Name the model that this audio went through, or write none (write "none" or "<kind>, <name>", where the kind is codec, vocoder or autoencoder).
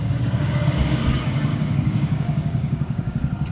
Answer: codec, DAC